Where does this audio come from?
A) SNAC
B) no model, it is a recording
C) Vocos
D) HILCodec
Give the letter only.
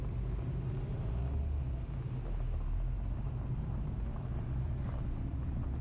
B